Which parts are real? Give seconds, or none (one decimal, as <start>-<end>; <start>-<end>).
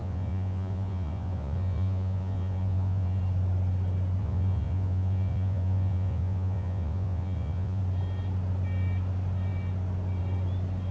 3.2-4.2; 7.8-10.9